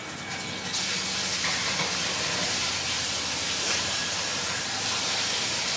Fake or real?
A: real